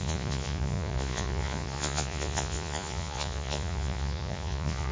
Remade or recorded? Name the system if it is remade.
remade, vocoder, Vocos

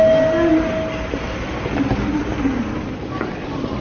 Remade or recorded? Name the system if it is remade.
recorded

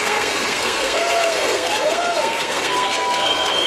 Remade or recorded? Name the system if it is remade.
remade, codec, SNAC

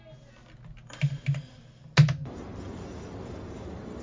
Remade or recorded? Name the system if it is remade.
recorded